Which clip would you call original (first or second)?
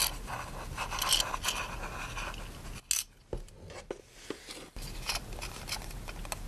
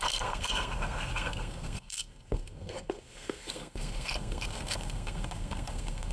first